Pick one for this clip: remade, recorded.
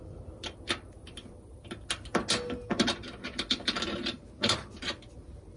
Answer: recorded